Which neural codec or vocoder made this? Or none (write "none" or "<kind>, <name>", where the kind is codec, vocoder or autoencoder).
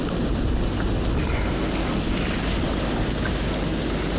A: none